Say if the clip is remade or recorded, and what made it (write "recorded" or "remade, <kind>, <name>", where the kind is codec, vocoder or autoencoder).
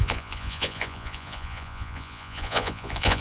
remade, vocoder, Vocos